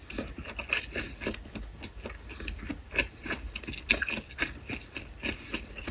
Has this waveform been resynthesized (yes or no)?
no